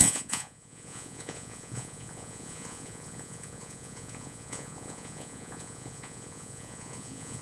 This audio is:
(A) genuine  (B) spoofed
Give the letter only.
B